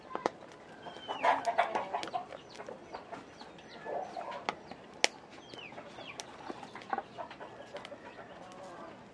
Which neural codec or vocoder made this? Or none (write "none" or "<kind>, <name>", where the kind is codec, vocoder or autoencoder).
none